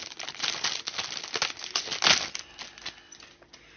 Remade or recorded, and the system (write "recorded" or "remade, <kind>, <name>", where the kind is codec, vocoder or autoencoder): recorded